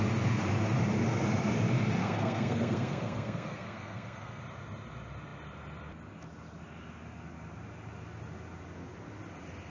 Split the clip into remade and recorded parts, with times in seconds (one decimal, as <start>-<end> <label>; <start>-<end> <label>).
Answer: 0.0-2.0 recorded; 2.0-4.4 remade; 4.4-9.7 recorded